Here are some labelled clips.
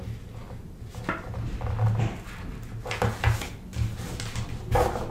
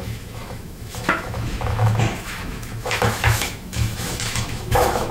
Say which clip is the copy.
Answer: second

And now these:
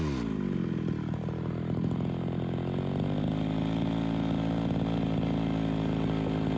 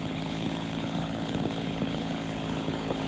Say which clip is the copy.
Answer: second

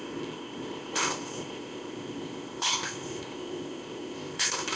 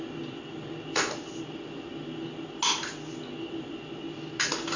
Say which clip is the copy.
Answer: first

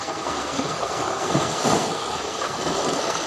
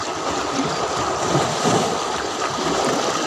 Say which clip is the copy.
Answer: first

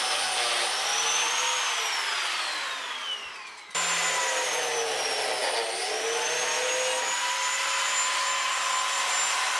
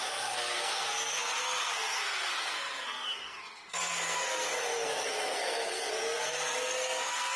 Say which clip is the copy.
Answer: second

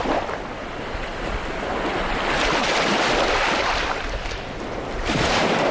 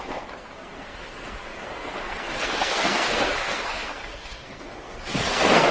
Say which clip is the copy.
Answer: second